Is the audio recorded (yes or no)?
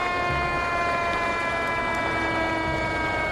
yes